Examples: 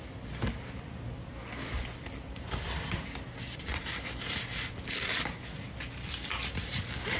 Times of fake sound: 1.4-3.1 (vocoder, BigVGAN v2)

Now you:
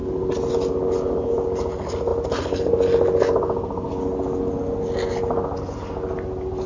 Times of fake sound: none

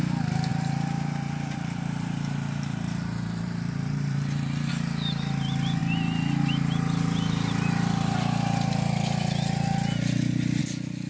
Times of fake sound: 0.5-4.7 (vocoder, BigVGAN v2)

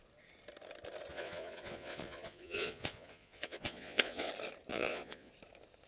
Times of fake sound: 1.1-4.3 (vocoder, Vocos); 4.7-5.3

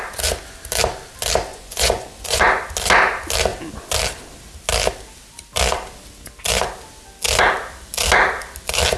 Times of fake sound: 1.5-2.6 (vocoder, Vocos)

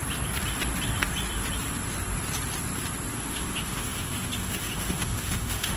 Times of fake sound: 3.1-5.8 (autoencoder, DAC-VAE)

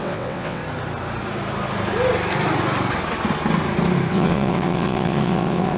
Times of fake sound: 0.0-0.6 (vocoder, WaveNeXt); 4.1-5.8

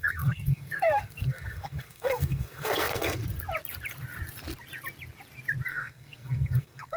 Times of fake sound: 0.0-3.2 (codec, SNAC); 5.7-7.0